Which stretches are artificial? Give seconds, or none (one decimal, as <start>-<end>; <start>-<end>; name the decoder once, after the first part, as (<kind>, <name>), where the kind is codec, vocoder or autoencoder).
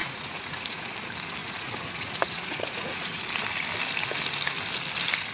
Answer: 0.0-0.9 (vocoder, Vocos); 1.4-3.2